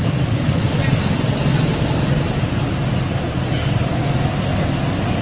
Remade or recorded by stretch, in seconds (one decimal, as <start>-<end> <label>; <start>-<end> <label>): 0.0-5.2 recorded